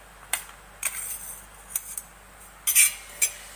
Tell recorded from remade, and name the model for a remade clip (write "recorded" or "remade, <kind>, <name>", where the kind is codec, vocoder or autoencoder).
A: recorded